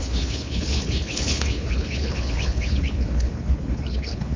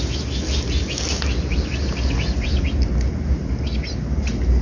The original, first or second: second